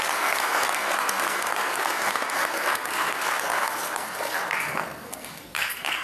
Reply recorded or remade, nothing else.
remade